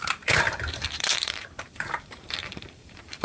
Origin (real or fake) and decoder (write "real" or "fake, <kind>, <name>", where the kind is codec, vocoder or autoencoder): fake, vocoder, BigVGAN v2